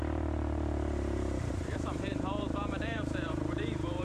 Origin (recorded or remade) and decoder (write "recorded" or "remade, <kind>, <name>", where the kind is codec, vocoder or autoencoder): remade, vocoder, BigVGAN v2